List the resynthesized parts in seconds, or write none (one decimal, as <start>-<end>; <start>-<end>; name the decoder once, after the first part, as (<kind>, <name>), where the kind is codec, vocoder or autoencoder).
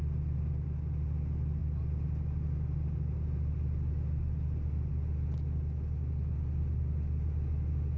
none